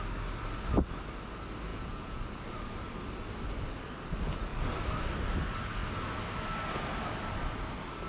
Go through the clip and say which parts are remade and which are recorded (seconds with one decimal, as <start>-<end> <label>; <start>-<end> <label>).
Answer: 0.0-1.7 recorded; 1.7-2.2 remade; 2.2-8.1 recorded